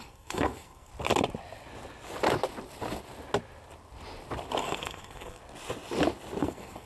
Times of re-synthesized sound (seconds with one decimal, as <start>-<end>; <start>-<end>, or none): 0.0-0.9; 4.6-5.4; 6.4-6.9